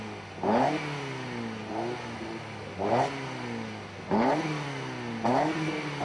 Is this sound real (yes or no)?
yes